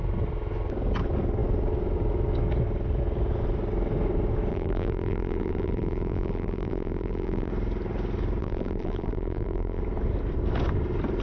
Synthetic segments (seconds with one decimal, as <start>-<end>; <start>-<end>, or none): 4.5-7.5; 8.4-9.8